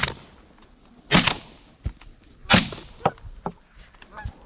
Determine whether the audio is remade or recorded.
recorded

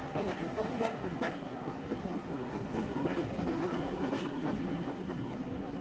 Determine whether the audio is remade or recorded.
remade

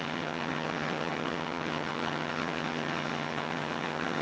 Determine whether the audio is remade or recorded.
remade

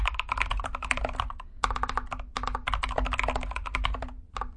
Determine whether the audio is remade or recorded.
recorded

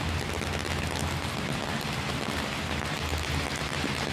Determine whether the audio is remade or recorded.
recorded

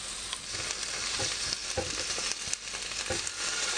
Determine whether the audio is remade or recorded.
recorded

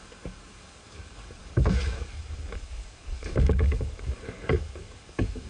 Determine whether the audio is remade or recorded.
remade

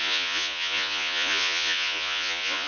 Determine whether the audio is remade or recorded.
remade